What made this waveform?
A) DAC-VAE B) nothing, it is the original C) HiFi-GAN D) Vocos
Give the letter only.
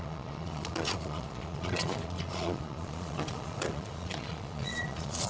D